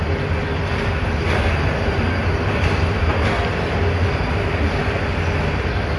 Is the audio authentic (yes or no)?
yes